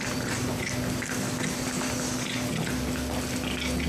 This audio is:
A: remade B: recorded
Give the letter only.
B